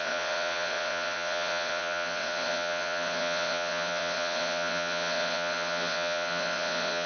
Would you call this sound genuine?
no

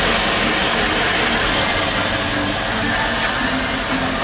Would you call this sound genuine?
yes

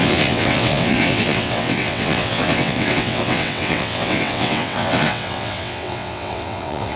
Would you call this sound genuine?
no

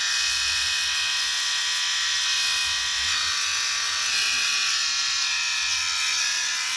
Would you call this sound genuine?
no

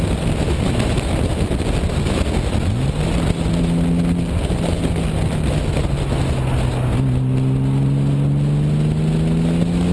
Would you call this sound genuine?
yes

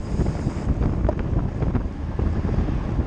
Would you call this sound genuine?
yes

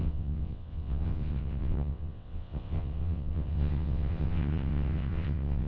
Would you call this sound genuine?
no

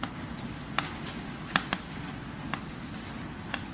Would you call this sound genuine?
yes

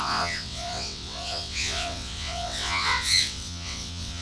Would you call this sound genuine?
no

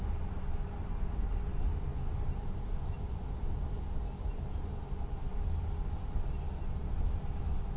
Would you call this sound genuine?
yes